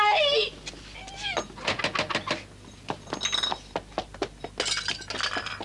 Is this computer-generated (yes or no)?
no